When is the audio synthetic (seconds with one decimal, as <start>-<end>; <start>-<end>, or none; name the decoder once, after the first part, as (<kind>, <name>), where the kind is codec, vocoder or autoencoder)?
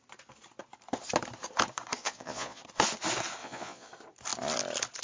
2.0-2.6 (vocoder, Vocos); 3.4-3.9